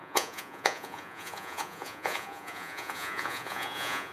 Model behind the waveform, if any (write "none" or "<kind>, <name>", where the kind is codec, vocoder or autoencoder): vocoder, Vocos